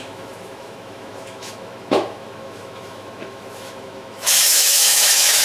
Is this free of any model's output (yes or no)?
no